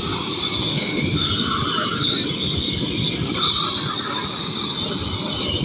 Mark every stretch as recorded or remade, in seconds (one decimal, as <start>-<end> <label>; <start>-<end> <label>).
0.0-0.7 recorded; 0.7-1.3 remade; 1.3-5.6 recorded